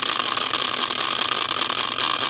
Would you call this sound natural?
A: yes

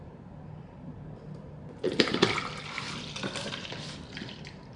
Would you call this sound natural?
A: yes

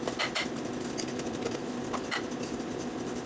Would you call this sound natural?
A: yes